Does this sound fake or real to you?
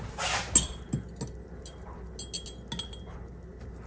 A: real